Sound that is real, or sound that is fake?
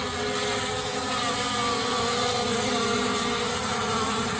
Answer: real